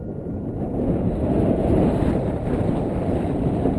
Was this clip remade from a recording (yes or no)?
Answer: yes